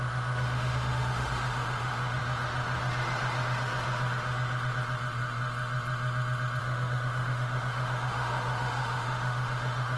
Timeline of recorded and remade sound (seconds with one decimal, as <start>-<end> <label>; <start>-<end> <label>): 0.0-2.2 remade; 2.2-6.6 recorded; 6.6-10.0 remade